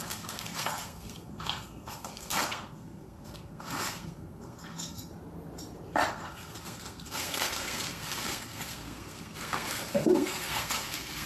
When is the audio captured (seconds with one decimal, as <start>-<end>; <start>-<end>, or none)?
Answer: 5.1-6.1